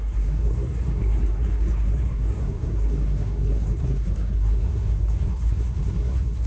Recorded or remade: remade